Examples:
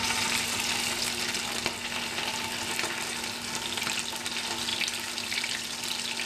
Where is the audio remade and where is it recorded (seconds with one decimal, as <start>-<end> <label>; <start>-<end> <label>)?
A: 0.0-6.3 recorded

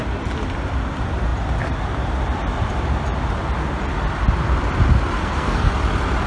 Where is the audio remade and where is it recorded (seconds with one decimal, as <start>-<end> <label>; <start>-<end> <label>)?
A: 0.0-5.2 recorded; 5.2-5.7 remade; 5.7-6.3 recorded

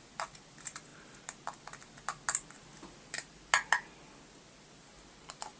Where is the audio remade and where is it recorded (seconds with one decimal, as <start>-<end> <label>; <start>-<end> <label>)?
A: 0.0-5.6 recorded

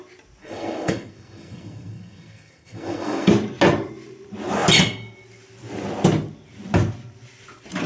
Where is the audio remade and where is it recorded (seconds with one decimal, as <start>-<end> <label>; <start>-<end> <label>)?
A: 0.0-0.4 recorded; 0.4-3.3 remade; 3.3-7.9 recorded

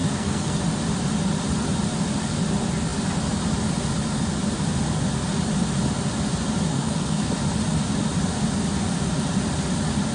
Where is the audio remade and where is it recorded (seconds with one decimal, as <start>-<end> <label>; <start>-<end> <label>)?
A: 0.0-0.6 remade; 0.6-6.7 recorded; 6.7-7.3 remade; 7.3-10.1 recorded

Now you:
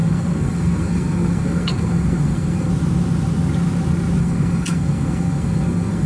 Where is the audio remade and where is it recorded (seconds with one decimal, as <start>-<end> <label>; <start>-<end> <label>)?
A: 0.0-2.7 remade; 2.7-4.2 recorded; 4.2-6.1 remade

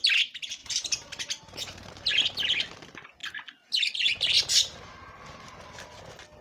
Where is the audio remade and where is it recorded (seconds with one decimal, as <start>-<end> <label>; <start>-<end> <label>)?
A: 0.0-6.4 recorded

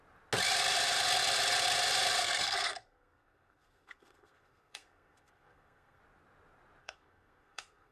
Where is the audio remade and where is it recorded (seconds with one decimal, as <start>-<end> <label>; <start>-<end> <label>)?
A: 0.0-2.2 recorded; 2.2-6.0 remade; 6.0-6.8 recorded; 6.8-7.9 remade